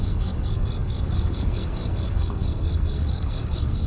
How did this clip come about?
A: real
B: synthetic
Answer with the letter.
B